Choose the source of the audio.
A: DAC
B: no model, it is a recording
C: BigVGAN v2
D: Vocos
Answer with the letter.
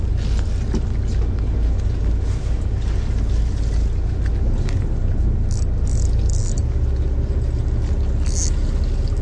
B